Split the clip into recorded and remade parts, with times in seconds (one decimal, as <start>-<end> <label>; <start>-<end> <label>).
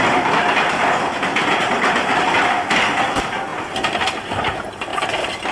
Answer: 0.0-5.5 recorded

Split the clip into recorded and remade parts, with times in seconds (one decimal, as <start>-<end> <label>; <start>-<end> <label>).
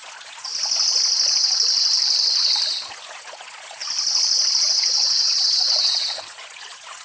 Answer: 0.0-0.5 remade; 0.5-2.9 recorded; 2.9-3.8 remade; 3.8-4.6 recorded; 4.6-7.0 remade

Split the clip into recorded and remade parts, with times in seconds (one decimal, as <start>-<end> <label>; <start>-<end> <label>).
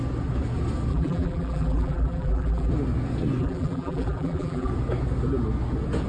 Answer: 0.0-0.9 recorded; 0.9-2.7 remade; 2.7-3.4 recorded; 3.4-4.7 remade; 4.7-6.1 recorded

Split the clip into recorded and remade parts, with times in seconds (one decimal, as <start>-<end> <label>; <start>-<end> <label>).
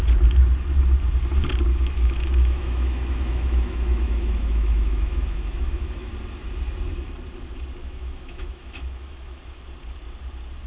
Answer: 0.0-1.7 recorded; 1.7-6.1 remade; 6.1-7.8 recorded; 7.8-9.6 remade; 9.6-10.7 recorded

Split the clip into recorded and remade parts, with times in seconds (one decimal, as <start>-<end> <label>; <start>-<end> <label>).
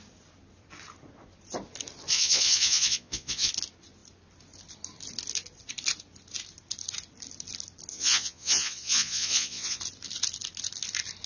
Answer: 0.0-2.1 recorded; 2.1-3.5 remade; 3.5-7.9 recorded; 7.9-9.8 remade; 9.8-11.3 recorded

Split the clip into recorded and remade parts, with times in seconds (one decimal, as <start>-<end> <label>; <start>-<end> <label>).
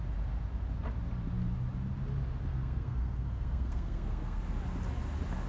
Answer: 0.0-2.5 recorded; 2.5-4.4 remade; 4.4-5.5 recorded